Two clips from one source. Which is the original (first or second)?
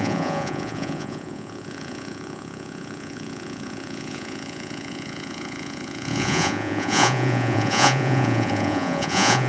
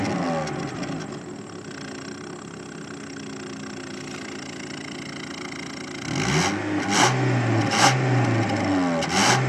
second